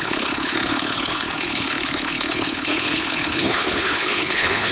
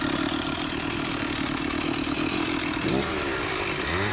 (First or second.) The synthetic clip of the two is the first